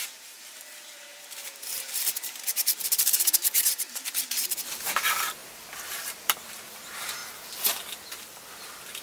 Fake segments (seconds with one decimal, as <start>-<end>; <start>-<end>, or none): 0.0-7.2; 8.1-9.0